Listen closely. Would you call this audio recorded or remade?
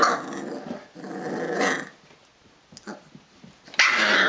recorded